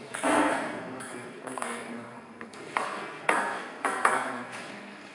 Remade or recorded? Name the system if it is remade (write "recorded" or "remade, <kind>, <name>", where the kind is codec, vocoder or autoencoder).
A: remade, codec, SNAC